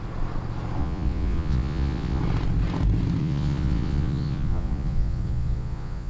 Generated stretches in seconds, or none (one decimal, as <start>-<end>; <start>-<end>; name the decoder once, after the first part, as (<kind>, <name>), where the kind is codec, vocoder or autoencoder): 0.8-2.2 (vocoder, Vocos); 3.2-6.1